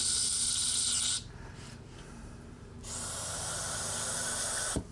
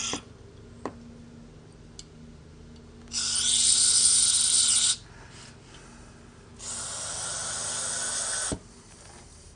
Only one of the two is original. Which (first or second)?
second